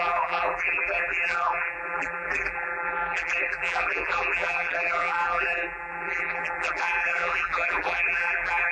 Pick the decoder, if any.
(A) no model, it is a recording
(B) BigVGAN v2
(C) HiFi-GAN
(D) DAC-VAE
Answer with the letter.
B